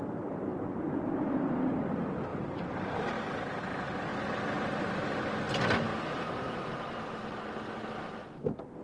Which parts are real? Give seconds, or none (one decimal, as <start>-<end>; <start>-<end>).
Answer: 0.0-2.3; 2.9-5.9; 7.6-8.8